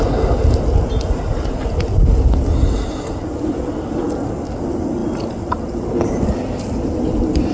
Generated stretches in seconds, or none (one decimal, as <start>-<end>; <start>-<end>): none